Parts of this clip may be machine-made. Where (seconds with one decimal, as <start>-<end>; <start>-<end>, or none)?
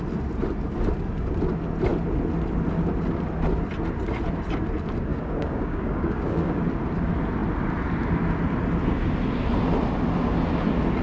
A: 5.1-6.6